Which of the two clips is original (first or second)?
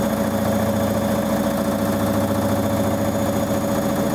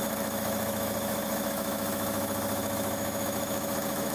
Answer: first